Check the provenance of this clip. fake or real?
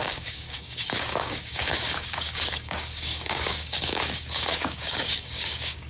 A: fake